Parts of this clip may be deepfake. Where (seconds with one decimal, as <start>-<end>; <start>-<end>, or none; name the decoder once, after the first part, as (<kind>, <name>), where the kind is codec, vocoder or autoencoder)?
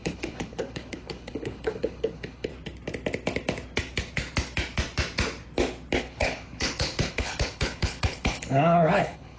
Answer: 0.0-2.5 (codec, HILCodec); 6.0-9.4